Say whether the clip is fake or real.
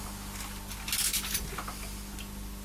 real